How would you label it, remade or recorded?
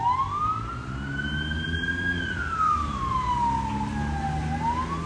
recorded